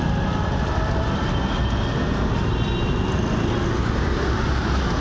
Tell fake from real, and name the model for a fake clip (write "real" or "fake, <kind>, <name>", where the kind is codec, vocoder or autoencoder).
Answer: real